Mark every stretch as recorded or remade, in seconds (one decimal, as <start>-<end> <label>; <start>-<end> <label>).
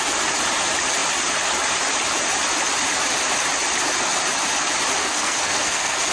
0.0-5.0 recorded; 5.0-6.1 remade